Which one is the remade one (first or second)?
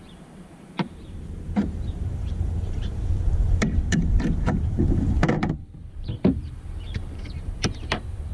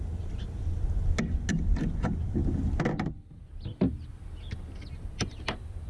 first